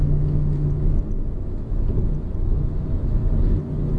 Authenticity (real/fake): real